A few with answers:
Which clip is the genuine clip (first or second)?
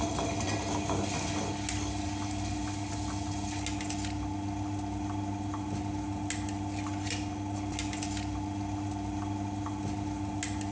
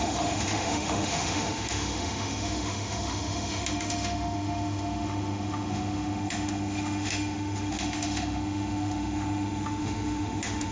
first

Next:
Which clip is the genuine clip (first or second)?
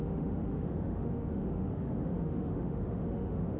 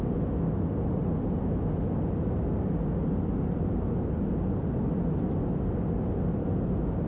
second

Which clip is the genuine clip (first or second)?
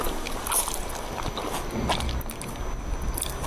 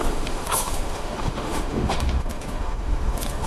first